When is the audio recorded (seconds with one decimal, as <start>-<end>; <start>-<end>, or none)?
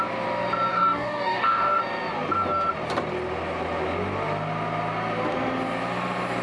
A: 0.0-0.7; 1.8-6.4